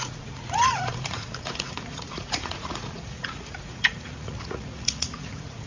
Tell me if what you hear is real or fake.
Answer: fake